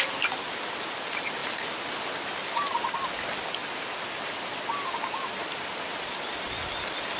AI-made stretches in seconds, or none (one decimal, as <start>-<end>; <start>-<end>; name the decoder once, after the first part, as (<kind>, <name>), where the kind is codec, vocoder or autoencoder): none